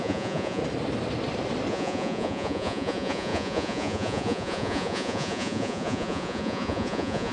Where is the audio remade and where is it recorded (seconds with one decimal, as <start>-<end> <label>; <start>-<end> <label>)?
0.0-0.6 remade; 0.6-1.7 recorded; 1.7-7.3 remade